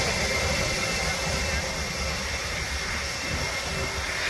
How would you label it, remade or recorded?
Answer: recorded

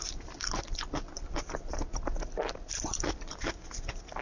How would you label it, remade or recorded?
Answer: recorded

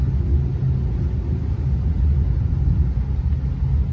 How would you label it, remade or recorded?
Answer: recorded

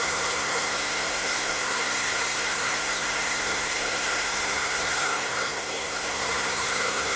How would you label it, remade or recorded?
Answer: remade